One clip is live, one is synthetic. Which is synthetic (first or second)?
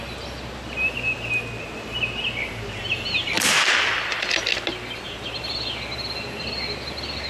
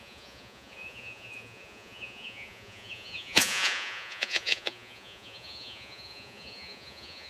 second